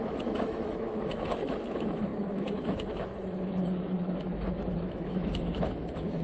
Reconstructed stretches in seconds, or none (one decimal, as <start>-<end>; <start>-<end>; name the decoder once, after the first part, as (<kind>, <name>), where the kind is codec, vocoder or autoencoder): 0.0-6.2 (autoencoder, DAC-VAE)